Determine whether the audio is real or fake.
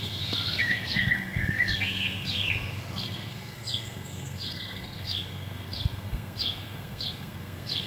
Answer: fake